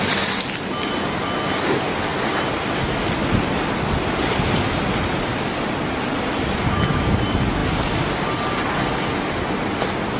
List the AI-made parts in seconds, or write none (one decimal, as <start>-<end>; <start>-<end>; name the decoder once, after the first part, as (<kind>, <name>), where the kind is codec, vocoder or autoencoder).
none